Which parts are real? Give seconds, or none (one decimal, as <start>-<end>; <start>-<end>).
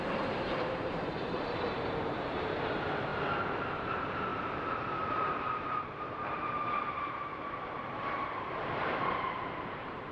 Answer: 3.1-3.9